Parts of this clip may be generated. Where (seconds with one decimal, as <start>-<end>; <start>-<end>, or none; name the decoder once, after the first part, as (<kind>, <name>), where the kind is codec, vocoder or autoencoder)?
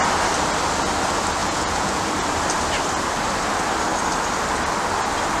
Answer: 1.4-2.0 (vocoder, Vocos)